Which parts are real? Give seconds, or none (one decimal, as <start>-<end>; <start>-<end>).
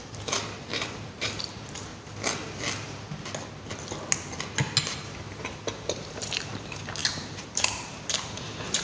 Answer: 1.9-4.8